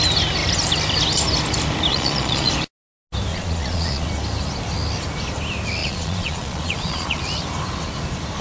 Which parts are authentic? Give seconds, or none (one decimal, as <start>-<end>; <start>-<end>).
0.0-1.9; 2.5-3.3; 4.1-5.8; 7.2-8.4

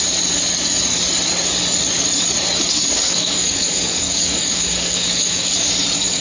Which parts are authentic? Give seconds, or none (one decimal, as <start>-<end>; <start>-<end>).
0.0-2.8; 5.7-6.2

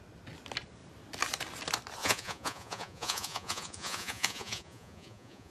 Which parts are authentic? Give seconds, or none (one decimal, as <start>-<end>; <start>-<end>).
0.0-2.0

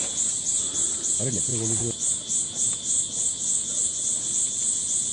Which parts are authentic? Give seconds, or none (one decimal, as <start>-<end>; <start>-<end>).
0.0-5.1

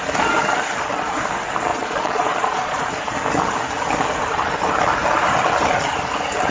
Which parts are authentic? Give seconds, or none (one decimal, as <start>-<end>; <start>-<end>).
0.0-1.7; 2.9-6.5